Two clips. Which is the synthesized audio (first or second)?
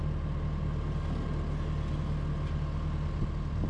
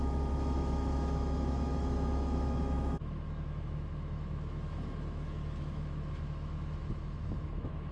second